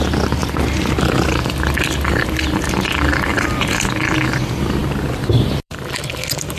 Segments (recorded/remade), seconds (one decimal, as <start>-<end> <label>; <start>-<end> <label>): 0.0-4.8 recorded; 4.8-6.1 remade; 6.1-6.6 recorded